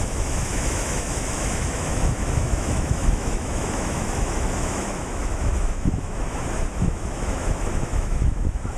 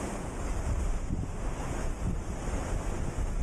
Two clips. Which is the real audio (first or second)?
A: second